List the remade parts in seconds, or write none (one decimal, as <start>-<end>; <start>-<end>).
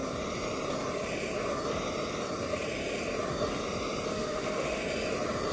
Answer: 4.1-4.8